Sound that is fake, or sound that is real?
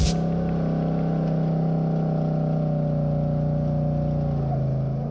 real